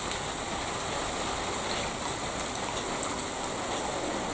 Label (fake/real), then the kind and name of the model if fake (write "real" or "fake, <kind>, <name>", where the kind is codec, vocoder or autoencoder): real